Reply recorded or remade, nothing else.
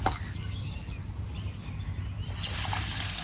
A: recorded